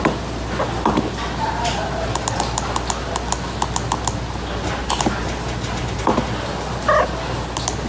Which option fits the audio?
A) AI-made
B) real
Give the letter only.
B